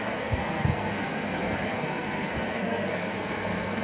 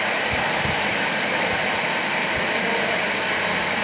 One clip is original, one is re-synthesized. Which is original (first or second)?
second